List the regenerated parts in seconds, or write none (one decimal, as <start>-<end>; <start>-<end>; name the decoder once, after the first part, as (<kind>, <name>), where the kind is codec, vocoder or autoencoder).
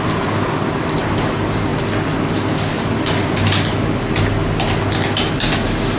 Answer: none